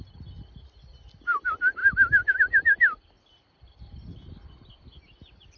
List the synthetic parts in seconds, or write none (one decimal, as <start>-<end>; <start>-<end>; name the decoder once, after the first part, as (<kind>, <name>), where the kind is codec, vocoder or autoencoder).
none